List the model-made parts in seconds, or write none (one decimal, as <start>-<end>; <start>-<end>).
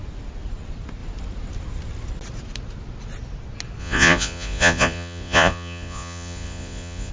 3.8-7.1